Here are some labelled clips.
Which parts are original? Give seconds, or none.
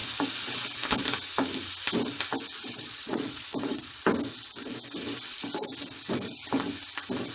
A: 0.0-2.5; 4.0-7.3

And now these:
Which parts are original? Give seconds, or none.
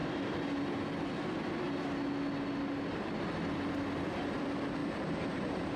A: 0.0-4.8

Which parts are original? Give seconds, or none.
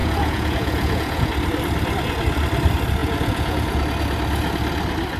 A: 1.3-3.0; 3.8-5.2